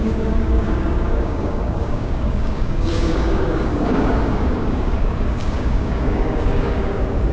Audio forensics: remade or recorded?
remade